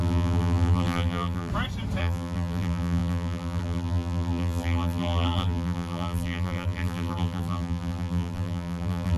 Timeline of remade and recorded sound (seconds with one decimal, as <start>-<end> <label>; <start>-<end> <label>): 0.0-1.5 remade; 1.5-2.0 recorded; 2.0-9.2 remade